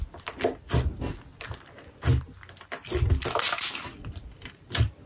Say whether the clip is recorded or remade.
recorded